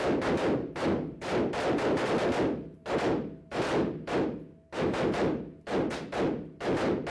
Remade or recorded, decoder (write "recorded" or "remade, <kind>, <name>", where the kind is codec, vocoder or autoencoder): recorded